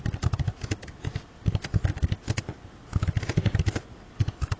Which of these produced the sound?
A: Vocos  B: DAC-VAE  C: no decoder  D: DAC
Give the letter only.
C